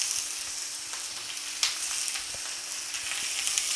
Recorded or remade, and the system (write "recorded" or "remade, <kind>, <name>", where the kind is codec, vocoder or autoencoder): recorded